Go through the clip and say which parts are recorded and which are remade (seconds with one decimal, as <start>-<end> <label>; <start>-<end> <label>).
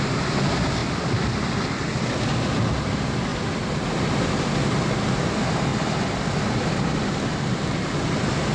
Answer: 0.0-0.8 recorded; 0.8-1.5 remade; 1.5-3.3 recorded; 3.3-4.1 remade; 4.1-5.7 recorded; 5.7-7.0 remade; 7.0-8.5 recorded